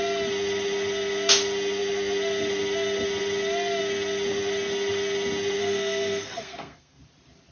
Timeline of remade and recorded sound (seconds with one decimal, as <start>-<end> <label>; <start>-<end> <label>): 0.0-5.6 recorded; 5.6-7.0 remade; 7.0-7.5 recorded